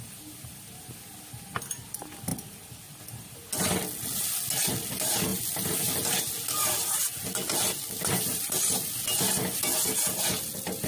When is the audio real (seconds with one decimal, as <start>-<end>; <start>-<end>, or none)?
0.0-10.9